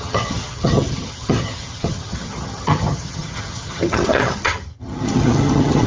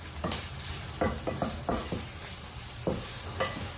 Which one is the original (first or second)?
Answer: second